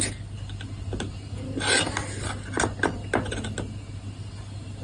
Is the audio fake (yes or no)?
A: no